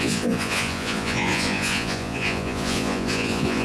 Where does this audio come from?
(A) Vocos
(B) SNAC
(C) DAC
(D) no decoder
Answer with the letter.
A